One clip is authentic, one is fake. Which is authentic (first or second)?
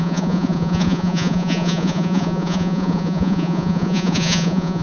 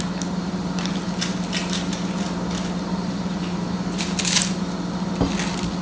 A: second